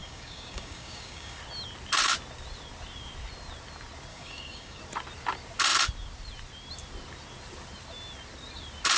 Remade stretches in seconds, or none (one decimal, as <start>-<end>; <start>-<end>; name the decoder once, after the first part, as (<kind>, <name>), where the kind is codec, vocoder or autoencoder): 0.0-1.4 (codec, DAC); 4.1-4.8

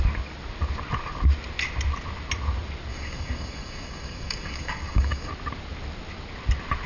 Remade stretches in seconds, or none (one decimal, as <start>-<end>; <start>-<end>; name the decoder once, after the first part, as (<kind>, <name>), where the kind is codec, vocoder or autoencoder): 2.9-5.3 (codec, DAC)

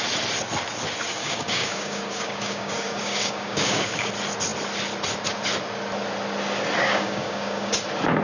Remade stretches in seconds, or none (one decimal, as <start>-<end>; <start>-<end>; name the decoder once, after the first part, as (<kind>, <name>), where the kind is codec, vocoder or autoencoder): 1.2-4.1 (codec, DAC); 6.8-7.7

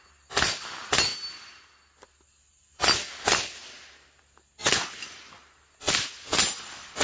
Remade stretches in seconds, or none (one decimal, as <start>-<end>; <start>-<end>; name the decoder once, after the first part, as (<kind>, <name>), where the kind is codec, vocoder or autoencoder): none

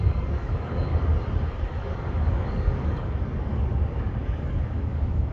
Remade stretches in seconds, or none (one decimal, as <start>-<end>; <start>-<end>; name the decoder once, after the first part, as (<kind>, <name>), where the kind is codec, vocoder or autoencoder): 0.0-1.1 (codec, DAC); 1.8-5.3